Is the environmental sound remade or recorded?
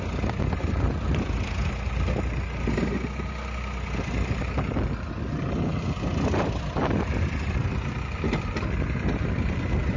recorded